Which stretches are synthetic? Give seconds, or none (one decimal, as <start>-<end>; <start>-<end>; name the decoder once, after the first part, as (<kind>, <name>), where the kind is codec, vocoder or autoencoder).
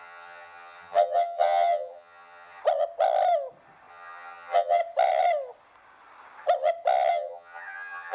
0.0-2.6 (vocoder, HiFi-GAN); 3.9-4.8; 7.1-8.1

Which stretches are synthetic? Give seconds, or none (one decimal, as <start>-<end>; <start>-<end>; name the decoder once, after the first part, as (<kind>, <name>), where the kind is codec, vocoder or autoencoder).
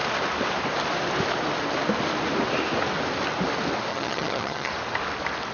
3.9-4.7 (vocoder, HiFi-GAN)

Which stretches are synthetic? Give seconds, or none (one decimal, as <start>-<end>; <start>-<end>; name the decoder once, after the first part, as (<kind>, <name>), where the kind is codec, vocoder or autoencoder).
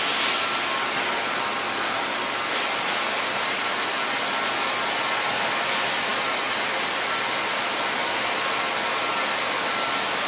none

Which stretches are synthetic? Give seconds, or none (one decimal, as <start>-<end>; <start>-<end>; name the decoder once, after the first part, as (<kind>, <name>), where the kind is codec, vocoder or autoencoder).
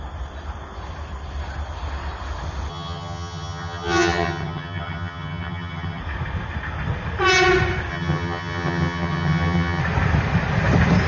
2.7-6.0 (vocoder, HiFi-GAN); 7.9-9.8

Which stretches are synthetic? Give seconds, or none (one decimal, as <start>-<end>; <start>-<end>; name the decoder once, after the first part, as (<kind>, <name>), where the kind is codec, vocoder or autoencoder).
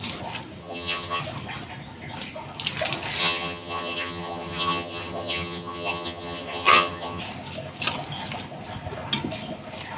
0.6-1.2 (vocoder, HiFi-GAN); 3.2-7.2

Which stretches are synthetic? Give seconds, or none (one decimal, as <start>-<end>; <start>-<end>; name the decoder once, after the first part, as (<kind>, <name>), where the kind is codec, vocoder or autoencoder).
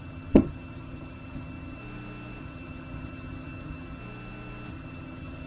0.0-1.8 (vocoder, HiFi-GAN); 2.4-4.0; 4.7-5.5